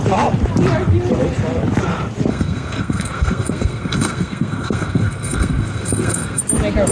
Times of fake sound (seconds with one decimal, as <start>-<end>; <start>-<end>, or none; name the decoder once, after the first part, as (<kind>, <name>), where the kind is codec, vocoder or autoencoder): 2.3-6.4 (codec, SNAC)